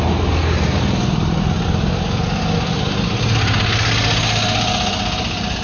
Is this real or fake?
real